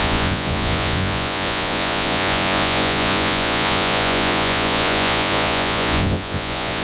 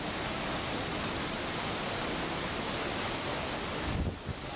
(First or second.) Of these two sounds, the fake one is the first